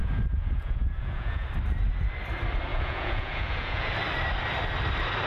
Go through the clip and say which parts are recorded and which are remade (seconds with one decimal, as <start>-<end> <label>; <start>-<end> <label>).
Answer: 0.0-1.5 remade; 1.5-2.7 recorded; 2.7-3.9 remade; 3.9-5.3 recorded